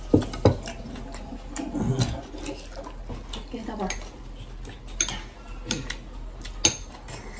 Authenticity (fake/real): real